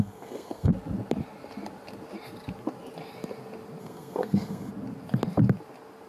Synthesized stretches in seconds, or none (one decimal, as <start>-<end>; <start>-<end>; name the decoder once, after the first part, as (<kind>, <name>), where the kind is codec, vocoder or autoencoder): 0.0-0.7 (codec, SNAC); 3.8-4.7